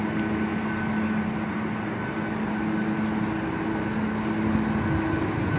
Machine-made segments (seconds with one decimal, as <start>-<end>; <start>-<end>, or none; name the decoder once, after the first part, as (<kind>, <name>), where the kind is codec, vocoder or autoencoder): none